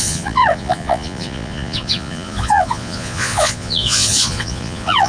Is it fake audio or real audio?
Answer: fake